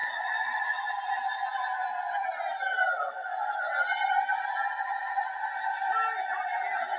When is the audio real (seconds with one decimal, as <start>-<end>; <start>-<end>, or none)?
0.8-7.0